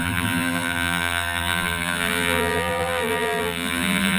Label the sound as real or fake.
fake